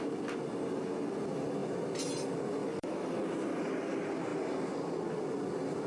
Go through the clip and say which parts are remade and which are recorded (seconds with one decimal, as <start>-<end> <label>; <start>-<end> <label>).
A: 0.0-2.6 recorded; 2.6-3.1 remade; 3.1-5.9 recorded